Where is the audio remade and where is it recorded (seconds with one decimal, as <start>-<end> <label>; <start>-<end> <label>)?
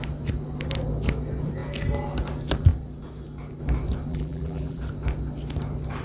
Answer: 0.0-4.1 recorded; 4.1-4.8 remade; 4.8-6.0 recorded